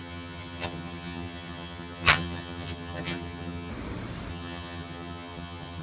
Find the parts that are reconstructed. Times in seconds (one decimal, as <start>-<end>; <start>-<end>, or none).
0.0-3.7; 4.3-5.8